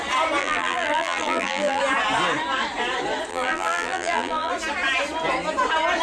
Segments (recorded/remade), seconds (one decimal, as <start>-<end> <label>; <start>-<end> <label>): 0.0-0.4 recorded; 0.4-1.8 remade; 1.8-3.3 recorded; 3.3-4.5 remade; 4.5-6.0 recorded